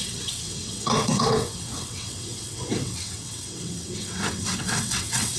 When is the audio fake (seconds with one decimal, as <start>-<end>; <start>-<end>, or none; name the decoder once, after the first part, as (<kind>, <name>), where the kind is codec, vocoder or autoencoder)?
0.0-5.4 (vocoder, WaveNeXt)

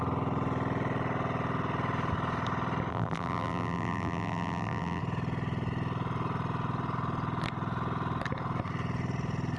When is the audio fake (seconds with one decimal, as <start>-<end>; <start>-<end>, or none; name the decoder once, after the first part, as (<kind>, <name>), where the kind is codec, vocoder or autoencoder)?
2.9-5.0 (vocoder, BigVGAN v2)

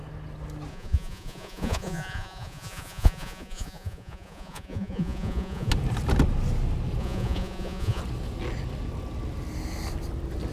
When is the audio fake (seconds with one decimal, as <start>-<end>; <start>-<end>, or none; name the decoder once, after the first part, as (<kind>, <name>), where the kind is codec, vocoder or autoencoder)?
0.7-5.7 (vocoder, Vocos); 7.0-8.0

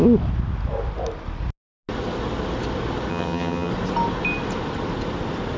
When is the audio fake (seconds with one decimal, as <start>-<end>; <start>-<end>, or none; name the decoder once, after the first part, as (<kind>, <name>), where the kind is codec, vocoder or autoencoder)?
3.1-3.7 (vocoder, HiFi-GAN)

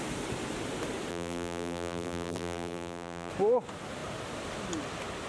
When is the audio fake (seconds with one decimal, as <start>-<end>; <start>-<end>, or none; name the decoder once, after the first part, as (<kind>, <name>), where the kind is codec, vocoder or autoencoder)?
1.1-3.3 (vocoder, BigVGAN v2)

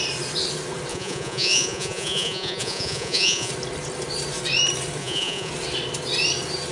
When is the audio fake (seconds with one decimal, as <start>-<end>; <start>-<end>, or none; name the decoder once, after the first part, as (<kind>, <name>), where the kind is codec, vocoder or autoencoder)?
0.9-3.5 (vocoder, Vocos); 5.0-5.5

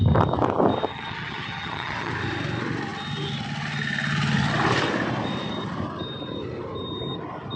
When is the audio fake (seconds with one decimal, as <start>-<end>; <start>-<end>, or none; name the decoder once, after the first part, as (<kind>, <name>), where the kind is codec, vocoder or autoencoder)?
0.9-2.1 (vocoder, HiFi-GAN)

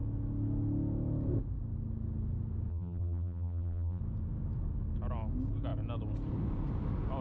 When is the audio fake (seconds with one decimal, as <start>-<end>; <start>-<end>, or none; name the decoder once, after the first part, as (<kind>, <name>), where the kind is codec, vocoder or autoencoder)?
2.7-4.0 (vocoder, BigVGAN v2)